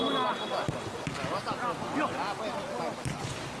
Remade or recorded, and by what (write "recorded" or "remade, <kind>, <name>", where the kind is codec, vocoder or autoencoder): recorded